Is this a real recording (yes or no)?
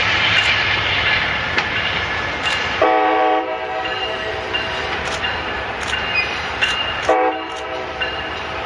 no